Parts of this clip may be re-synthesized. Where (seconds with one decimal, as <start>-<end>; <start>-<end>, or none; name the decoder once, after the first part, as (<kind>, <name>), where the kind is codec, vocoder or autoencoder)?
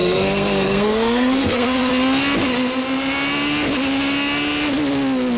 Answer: 0.0-1.9 (codec, SNAC)